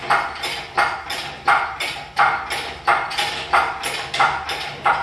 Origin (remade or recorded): recorded